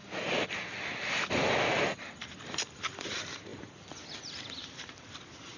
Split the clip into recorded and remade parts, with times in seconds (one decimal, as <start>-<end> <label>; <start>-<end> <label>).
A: 0.0-1.3 recorded; 1.3-3.5 remade; 3.5-4.5 recorded; 4.5-5.6 remade